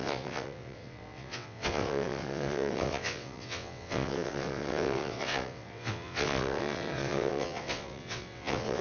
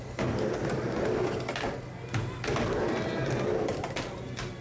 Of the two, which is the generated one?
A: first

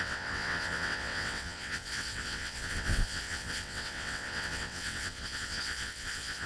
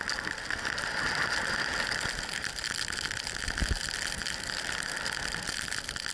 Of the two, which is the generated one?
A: first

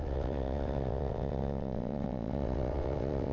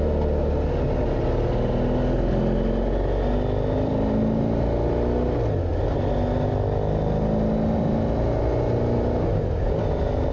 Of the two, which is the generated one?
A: first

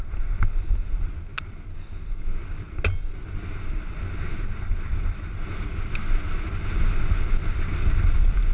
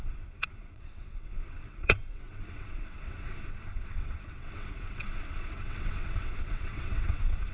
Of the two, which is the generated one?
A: second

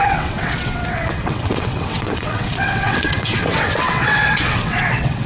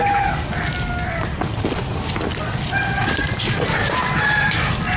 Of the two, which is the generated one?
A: first